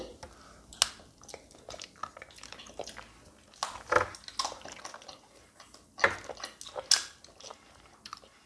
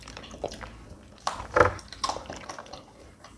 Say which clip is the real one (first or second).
first